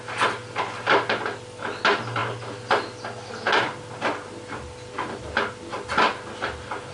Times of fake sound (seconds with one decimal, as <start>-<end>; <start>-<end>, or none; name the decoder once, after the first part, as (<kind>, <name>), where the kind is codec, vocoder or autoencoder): none